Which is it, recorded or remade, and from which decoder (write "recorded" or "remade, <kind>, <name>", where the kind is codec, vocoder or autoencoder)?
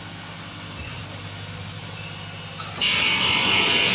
recorded